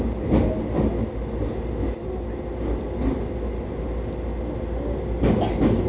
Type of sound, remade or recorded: recorded